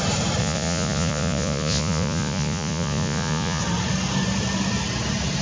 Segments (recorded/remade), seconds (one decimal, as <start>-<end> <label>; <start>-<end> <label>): 0.0-0.4 recorded; 0.4-3.6 remade; 3.6-5.4 recorded